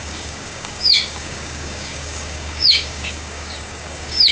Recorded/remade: remade